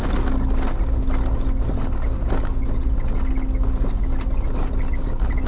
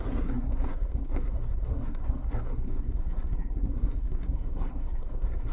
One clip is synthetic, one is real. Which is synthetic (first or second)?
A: second